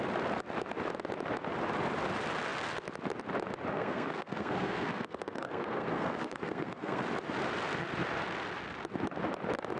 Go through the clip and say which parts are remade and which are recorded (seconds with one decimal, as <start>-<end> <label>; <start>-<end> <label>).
0.0-3.7 recorded; 3.7-7.0 remade; 7.0-9.8 recorded